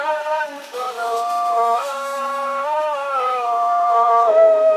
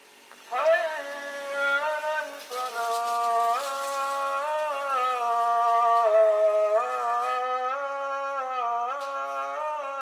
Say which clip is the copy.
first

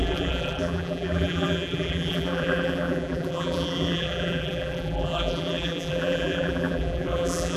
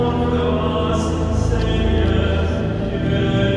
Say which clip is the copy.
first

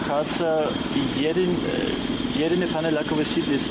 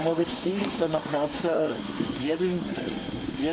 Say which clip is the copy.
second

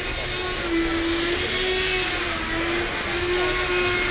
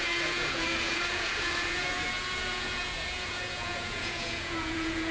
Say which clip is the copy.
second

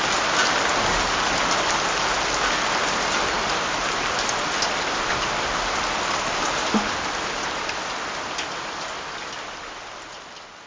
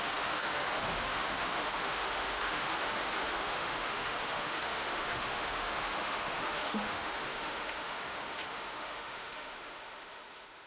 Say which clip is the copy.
second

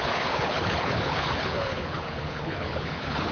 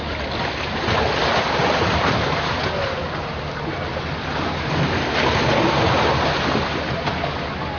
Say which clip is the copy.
first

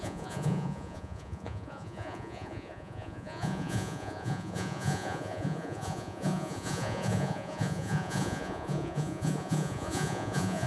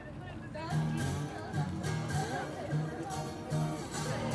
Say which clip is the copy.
first